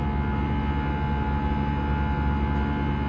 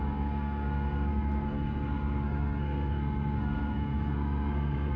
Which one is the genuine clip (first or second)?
first